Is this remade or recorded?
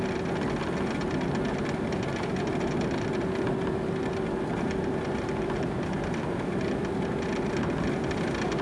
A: recorded